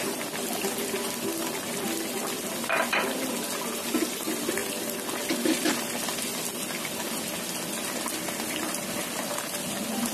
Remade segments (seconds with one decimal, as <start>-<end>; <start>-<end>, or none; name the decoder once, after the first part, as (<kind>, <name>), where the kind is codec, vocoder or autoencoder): none